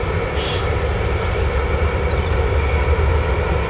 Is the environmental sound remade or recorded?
recorded